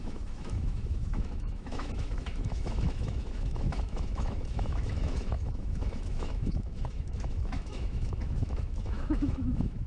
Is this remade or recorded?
remade